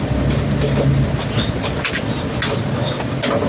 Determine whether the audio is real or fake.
real